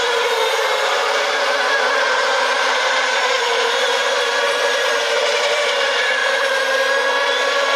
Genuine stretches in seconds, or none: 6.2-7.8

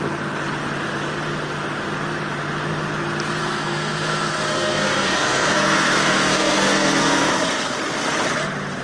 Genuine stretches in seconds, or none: 0.0-3.4; 7.3-8.8